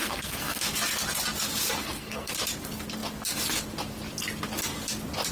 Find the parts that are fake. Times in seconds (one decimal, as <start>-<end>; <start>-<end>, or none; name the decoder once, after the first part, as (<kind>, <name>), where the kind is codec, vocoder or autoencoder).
0.0-0.6 (codec, SNAC); 1.8-2.3